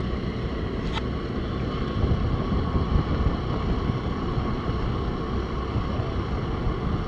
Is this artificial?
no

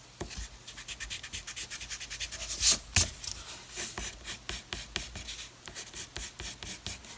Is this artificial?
no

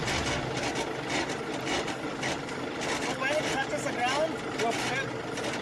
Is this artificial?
no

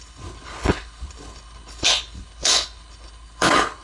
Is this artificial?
yes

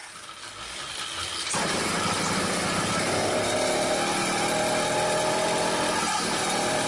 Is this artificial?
no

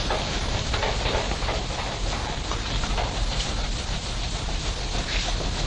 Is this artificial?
no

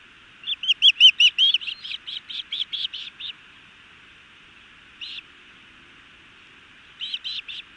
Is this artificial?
no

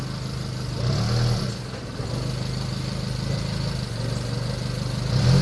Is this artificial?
no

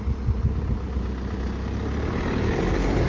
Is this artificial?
no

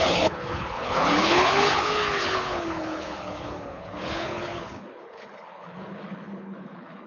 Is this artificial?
yes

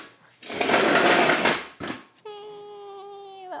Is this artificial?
no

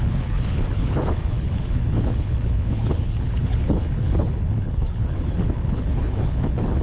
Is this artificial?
yes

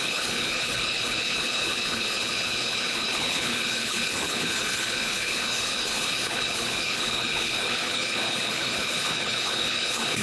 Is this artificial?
yes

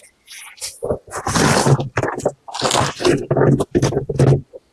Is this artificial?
no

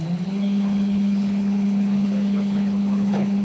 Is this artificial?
yes